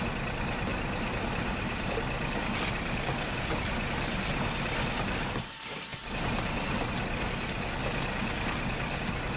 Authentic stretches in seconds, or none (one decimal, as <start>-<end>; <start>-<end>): 0.0-0.7; 2.0-9.4